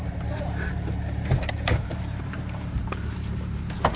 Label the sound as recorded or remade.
remade